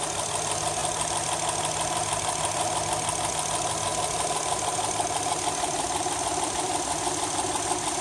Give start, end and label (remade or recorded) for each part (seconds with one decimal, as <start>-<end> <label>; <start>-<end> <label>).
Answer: 0.0-8.0 recorded